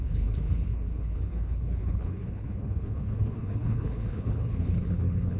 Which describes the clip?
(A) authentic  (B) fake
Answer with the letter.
B